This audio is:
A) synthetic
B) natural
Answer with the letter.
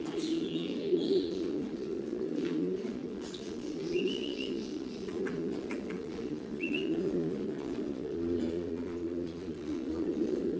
A